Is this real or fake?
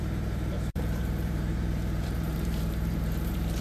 fake